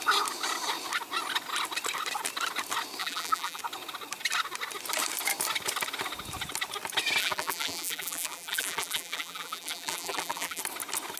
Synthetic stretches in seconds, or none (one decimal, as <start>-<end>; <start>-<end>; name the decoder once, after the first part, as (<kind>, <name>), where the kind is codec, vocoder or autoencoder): 3.0-3.6 (vocoder, BigVGAN v2); 7.2-10.6